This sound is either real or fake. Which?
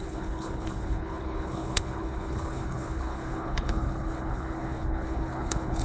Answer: fake